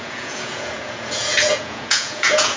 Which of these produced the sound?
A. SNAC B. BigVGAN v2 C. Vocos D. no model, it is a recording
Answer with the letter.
C